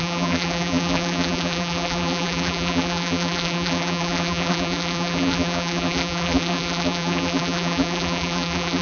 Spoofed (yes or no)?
yes